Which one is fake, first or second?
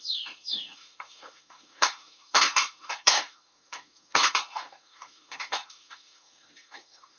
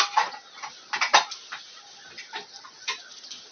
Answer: first